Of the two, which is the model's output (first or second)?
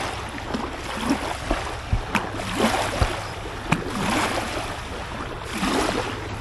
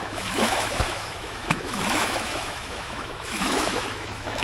second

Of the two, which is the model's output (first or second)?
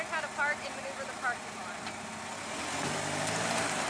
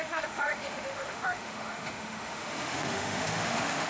second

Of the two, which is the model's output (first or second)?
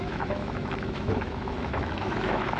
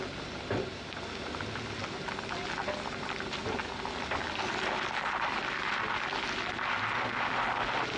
first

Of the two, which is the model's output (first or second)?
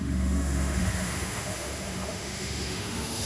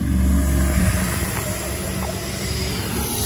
first